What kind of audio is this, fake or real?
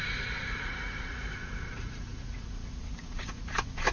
fake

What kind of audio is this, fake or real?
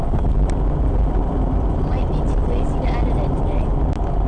real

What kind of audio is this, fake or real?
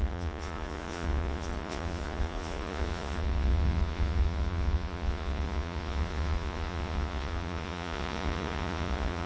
fake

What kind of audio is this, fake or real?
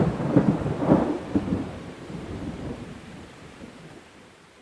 fake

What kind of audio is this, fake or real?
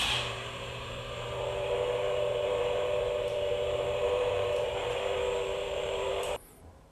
fake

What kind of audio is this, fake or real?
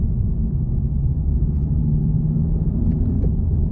fake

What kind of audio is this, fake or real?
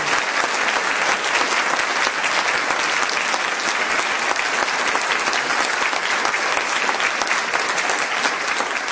real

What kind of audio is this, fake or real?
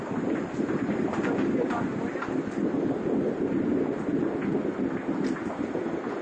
real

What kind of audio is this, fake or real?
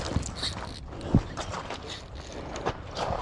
real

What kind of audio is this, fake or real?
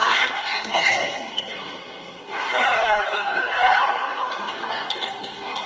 fake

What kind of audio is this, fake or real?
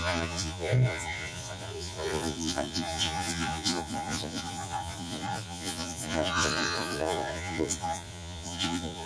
fake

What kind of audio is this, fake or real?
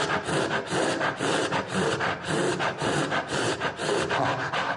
real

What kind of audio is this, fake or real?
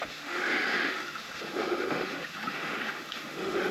fake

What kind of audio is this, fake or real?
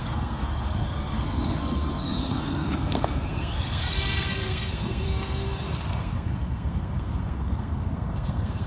fake